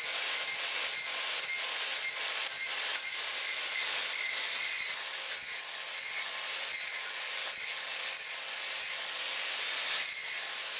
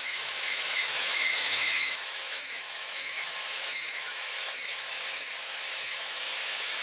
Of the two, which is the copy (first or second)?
second